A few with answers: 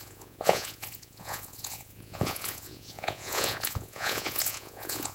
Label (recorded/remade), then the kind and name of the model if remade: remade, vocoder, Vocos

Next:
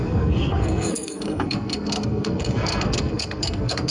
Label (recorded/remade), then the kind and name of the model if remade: remade, codec, SNAC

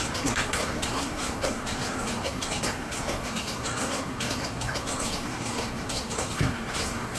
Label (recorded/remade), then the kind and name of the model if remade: remade, codec, SNAC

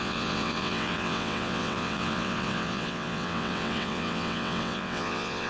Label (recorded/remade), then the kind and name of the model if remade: remade, vocoder, WaveNeXt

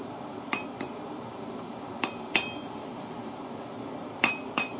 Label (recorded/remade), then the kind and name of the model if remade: remade, vocoder, BigVGAN v2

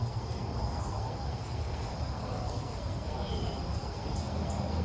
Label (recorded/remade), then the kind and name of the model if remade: remade, codec, SNAC